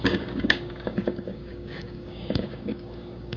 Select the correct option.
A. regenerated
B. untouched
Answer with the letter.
A